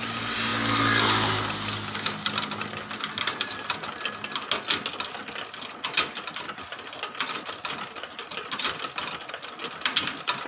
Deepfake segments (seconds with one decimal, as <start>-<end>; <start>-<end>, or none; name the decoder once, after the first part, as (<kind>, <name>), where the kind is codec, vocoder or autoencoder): none